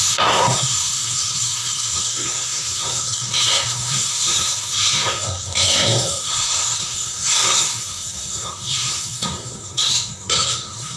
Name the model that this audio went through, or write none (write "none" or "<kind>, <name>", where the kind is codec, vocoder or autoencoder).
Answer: codec, SNAC